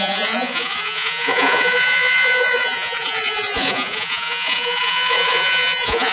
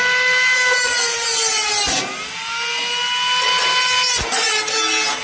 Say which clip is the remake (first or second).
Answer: first